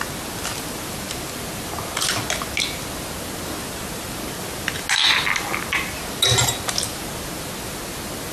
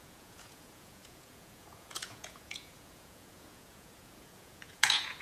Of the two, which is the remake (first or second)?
second